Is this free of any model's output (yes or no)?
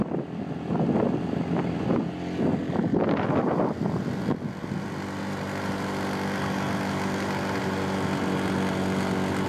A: yes